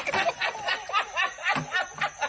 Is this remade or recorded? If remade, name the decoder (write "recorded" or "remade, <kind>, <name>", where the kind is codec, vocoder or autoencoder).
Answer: recorded